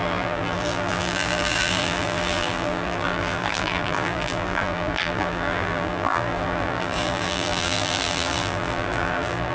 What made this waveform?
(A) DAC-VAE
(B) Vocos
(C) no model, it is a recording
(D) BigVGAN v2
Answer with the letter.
D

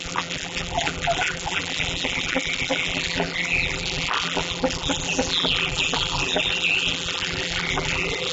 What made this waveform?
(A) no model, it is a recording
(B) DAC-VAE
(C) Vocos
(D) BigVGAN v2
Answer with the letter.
D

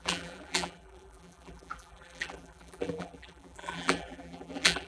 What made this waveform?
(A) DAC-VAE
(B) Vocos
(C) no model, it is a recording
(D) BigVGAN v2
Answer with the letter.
D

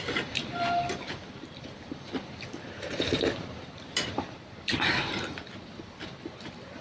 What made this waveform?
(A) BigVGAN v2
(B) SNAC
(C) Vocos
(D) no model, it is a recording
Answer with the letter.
A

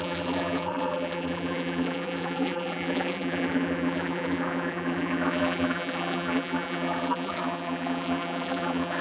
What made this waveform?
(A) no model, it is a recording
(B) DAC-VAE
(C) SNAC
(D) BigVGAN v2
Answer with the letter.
D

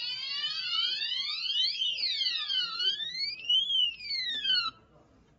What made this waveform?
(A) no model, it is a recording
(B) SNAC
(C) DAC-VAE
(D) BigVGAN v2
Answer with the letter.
A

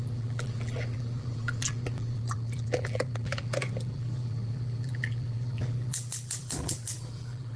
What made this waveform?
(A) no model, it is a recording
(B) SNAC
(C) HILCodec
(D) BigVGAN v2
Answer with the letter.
D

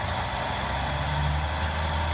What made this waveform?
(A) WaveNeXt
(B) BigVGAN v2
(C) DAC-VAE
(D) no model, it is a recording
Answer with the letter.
D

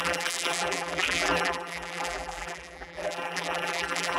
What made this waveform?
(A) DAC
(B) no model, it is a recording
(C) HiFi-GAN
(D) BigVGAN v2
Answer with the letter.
D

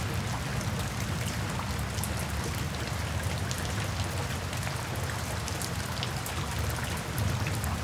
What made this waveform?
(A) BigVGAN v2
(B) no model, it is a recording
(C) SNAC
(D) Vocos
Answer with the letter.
B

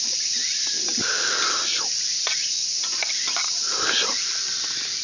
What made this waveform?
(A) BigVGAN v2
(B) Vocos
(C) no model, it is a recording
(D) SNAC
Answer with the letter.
A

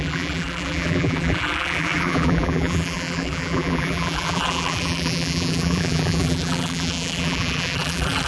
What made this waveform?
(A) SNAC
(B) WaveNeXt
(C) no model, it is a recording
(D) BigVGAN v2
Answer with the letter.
D